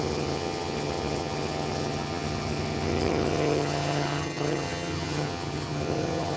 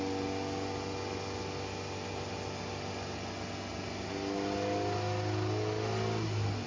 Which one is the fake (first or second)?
first